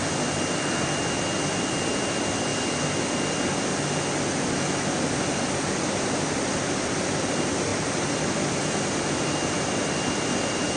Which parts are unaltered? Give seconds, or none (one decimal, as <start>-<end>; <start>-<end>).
0.0-1.0; 2.5-5.0